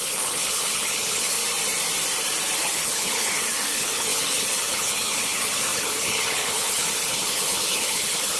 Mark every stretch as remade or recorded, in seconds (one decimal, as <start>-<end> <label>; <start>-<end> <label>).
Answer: 0.0-1.4 remade; 1.4-2.6 recorded; 2.6-8.4 remade